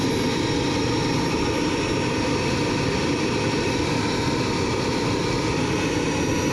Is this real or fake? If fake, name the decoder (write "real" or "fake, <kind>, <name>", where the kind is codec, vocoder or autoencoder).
real